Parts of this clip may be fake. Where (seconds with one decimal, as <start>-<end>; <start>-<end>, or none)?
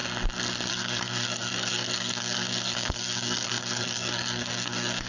0.7-5.1